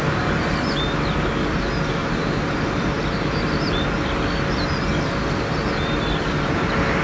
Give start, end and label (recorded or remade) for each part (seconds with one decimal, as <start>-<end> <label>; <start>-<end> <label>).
0.0-2.0 recorded; 2.0-3.0 remade; 3.0-7.0 recorded